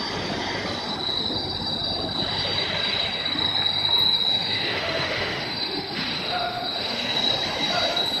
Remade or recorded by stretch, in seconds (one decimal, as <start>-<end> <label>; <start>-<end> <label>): 0.0-4.3 recorded; 4.3-7.2 remade; 7.2-8.2 recorded